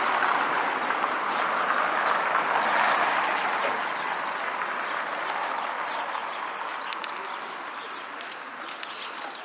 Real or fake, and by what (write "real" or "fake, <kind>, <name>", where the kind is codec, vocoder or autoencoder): real